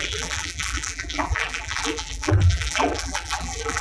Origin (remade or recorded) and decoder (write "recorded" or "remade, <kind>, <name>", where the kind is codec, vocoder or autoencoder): remade, vocoder, BigVGAN v2